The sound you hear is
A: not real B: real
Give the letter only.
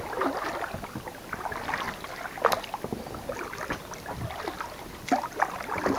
B